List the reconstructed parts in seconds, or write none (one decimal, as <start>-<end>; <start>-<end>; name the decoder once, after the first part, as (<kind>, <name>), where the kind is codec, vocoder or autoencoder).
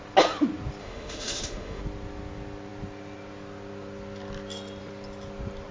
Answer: 0.8-1.8 (autoencoder, DAC-VAE)